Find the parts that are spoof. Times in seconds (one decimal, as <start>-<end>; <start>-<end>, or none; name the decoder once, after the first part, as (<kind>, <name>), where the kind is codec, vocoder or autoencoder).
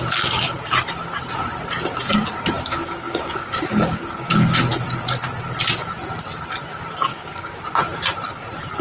2.7-4.6 (codec, DAC); 7.1-7.6